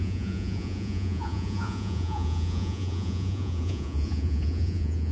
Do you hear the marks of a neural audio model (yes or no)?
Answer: yes